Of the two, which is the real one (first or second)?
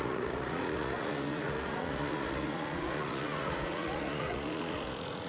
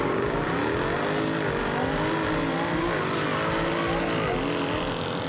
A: second